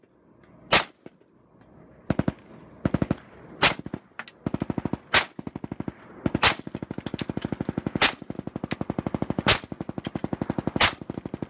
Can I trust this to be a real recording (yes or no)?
yes